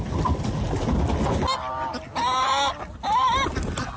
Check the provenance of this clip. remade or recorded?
recorded